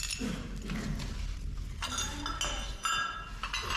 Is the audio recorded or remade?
recorded